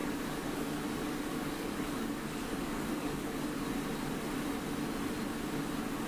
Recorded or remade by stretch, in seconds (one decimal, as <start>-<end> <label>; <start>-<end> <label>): 0.0-3.7 remade; 3.7-6.1 recorded

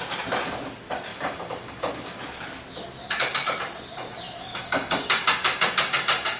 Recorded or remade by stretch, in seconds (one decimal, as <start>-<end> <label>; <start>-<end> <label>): 0.0-1.1 recorded; 1.1-2.2 remade; 2.2-4.5 recorded; 4.5-6.4 remade